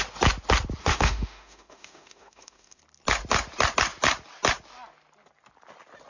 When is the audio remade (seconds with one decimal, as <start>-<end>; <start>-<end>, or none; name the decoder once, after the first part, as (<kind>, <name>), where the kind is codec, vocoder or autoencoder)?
0.8-2.8 (autoencoder, DAC-VAE)